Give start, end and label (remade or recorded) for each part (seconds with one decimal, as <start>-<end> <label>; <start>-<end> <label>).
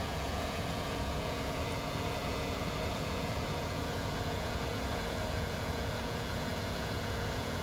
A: 0.0-7.6 remade